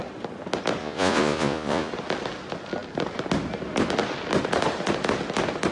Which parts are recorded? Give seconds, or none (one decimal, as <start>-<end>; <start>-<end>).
0.0-0.8; 1.9-5.7